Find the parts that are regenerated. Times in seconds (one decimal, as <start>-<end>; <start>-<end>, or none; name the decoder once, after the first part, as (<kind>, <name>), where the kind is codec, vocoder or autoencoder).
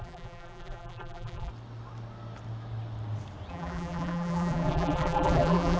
0.0-1.5 (vocoder, BigVGAN v2); 3.5-5.8